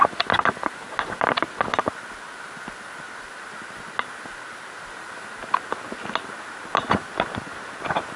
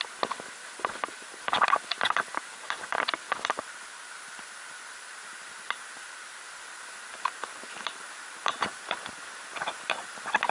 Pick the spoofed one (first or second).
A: second